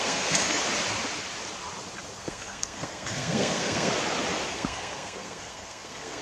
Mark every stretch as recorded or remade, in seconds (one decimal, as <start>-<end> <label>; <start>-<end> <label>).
0.0-0.6 remade; 0.6-2.2 recorded; 2.2-3.9 remade; 3.9-4.5 recorded; 4.5-6.2 remade